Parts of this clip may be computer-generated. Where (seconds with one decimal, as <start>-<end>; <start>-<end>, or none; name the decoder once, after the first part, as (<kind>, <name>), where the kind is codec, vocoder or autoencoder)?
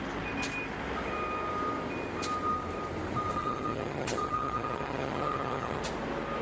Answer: 3.3-5.8 (vocoder, HiFi-GAN)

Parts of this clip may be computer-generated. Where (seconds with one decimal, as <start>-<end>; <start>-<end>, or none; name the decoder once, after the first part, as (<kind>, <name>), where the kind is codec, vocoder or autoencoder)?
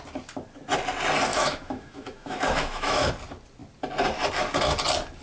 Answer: 1.3-3.1 (autoencoder, DAC-VAE)